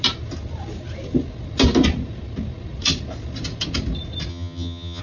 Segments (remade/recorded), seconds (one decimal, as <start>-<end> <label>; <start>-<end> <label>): 0.0-4.3 recorded; 4.3-5.0 remade